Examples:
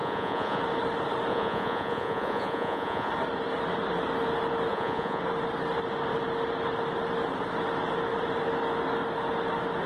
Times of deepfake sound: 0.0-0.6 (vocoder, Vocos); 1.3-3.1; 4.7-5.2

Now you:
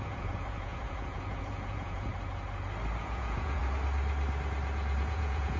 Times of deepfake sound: 0.0-2.1 (vocoder, Vocos); 3.0-3.6; 5.0-5.6

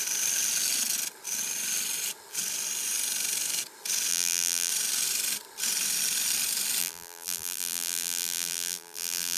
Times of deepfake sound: 4.1-4.7 (vocoder, BigVGAN v2); 6.8-9.4